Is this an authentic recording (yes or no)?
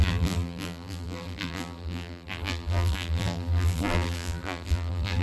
no